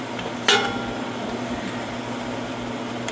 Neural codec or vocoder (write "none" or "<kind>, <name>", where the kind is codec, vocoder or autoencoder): none